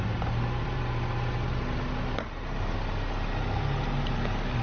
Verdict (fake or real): real